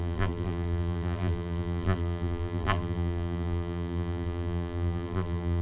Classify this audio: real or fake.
fake